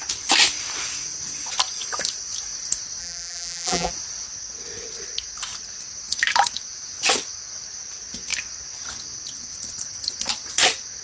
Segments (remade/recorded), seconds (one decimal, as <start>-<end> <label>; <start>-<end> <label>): 0.0-3.0 recorded; 3.0-3.9 remade; 3.9-11.0 recorded